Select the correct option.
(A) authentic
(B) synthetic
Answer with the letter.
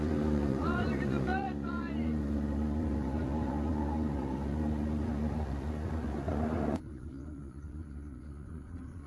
B